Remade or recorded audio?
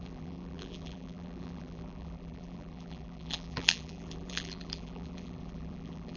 remade